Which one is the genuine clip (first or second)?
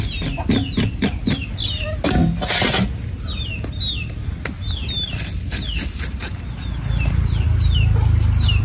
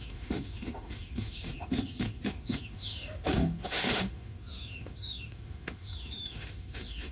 first